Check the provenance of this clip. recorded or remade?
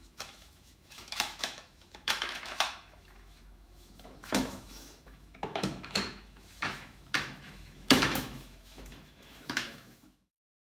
remade